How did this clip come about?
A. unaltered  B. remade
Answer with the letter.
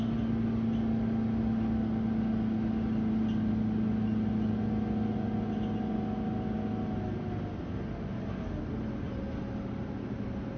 A